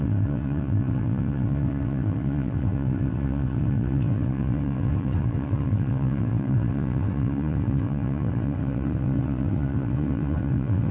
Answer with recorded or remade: remade